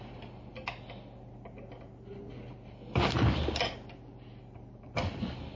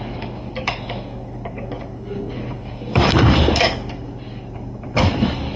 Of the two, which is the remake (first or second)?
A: second